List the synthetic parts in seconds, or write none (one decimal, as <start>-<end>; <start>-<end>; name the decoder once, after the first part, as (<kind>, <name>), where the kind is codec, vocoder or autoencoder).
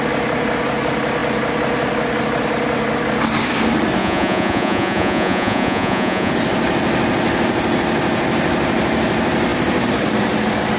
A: 4.0-6.3 (vocoder, Vocos)